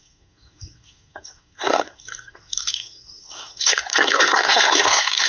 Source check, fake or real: fake